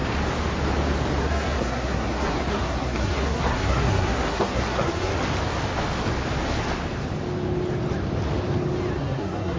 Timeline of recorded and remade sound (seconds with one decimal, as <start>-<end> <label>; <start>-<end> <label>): 0.0-1.2 recorded; 1.2-5.1 remade; 5.1-9.0 recorded; 9.0-9.6 remade